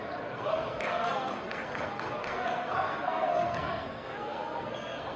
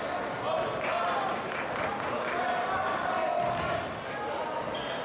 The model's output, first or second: first